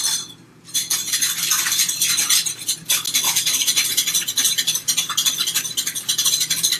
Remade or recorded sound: recorded